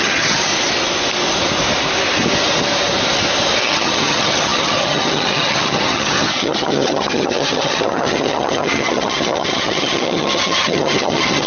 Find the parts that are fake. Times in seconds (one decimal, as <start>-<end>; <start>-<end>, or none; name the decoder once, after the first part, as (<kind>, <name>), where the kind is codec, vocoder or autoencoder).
0.0-0.5 (vocoder, HiFi-GAN); 3.6-11.5